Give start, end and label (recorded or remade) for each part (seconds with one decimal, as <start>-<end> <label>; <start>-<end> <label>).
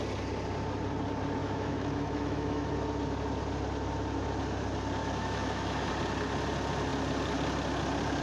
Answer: 0.0-1.4 recorded; 1.4-2.7 remade; 2.7-5.0 recorded; 5.0-5.9 remade; 5.9-8.2 recorded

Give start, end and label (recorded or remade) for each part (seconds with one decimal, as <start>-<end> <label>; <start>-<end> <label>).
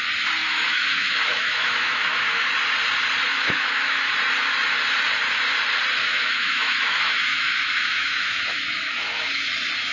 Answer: 0.0-0.4 recorded; 0.4-2.5 remade; 2.5-3.3 recorded; 3.3-4.1 remade; 4.1-6.0 recorded; 6.0-9.5 remade; 9.5-9.9 recorded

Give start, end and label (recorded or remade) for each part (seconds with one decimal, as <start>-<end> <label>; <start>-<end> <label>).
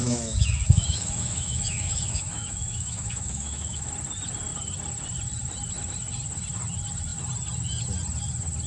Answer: 0.0-3.9 remade; 3.9-8.7 recorded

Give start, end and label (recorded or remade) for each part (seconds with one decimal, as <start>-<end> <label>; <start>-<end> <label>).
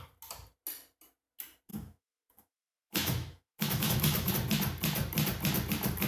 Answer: 0.0-1.7 recorded; 1.7-4.3 remade; 4.3-6.1 recorded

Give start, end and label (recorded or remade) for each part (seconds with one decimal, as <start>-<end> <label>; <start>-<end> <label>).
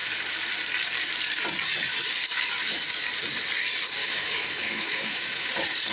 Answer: 0.0-4.0 recorded; 4.0-5.5 remade; 5.5-5.9 recorded